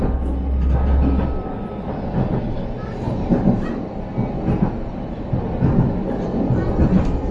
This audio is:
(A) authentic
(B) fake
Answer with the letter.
A